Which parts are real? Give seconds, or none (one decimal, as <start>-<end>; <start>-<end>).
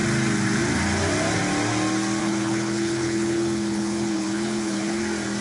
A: 0.0-2.2; 5.0-5.4